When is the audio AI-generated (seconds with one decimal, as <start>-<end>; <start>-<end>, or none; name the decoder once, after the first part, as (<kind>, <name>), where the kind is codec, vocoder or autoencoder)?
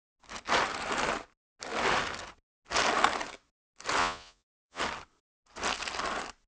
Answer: 4.0-4.8 (vocoder, Vocos)